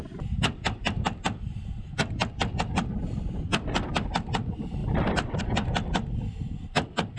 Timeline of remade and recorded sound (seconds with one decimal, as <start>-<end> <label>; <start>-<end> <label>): 0.0-4.8 recorded; 4.8-5.4 remade; 5.4-7.2 recorded